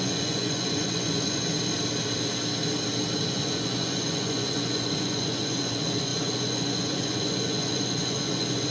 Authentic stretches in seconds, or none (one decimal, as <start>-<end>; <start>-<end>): 1.5-3.2